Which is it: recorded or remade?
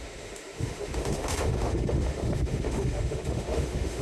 remade